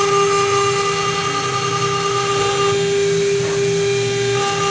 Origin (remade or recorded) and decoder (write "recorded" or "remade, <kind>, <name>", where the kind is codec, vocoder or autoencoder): recorded